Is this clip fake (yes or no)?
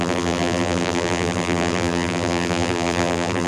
yes